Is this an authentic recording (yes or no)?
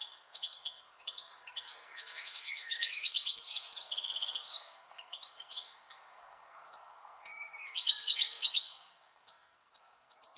no